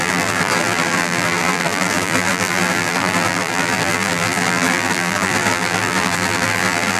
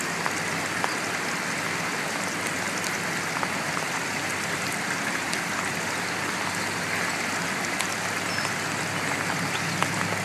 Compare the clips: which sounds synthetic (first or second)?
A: first